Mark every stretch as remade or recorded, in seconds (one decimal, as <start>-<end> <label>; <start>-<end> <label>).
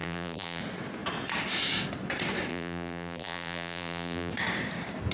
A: 0.0-0.6 remade; 0.6-2.5 recorded; 2.5-4.3 remade; 4.3-5.1 recorded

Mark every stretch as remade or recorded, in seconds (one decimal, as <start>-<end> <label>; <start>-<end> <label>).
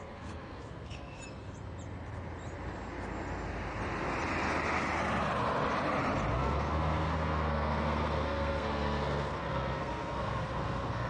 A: 0.0-1.2 remade; 1.2-6.3 recorded; 6.3-11.1 remade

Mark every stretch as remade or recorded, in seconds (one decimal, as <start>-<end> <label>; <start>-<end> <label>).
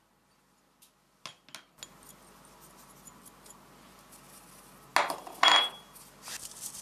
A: 0.0-6.8 recorded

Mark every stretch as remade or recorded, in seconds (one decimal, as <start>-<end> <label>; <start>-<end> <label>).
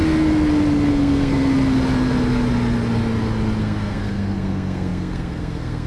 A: 0.0-0.9 recorded; 0.9-1.5 remade; 1.5-3.6 recorded; 3.6-5.9 remade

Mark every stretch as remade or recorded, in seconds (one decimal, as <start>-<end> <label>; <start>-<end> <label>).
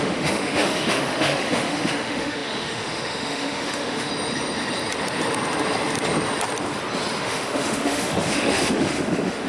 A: 0.0-4.1 remade; 4.1-7.2 recorded; 7.2-9.5 remade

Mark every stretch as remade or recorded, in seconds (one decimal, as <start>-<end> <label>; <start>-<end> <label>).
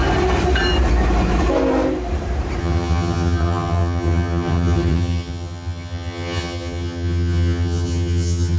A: 0.0-2.6 recorded; 2.6-8.6 remade